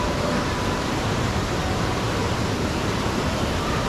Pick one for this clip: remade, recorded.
remade